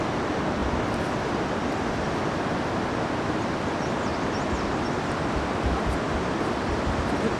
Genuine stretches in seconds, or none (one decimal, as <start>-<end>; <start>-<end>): 0.0-7.4